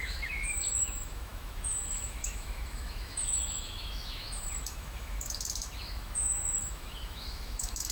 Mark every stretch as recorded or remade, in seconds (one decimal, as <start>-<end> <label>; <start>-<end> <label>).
0.0-7.9 remade